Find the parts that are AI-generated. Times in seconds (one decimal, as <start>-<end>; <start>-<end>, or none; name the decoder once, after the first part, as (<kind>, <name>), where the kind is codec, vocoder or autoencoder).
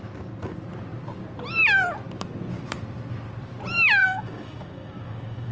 4.0-5.5 (codec, DAC)